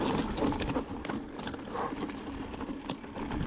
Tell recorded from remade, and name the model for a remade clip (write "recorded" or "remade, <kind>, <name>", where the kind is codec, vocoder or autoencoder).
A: recorded